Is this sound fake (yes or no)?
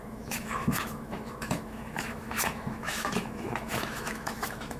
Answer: yes